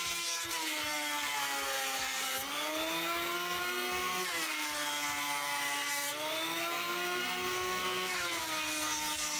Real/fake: fake